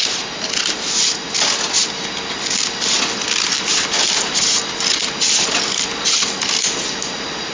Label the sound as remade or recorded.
recorded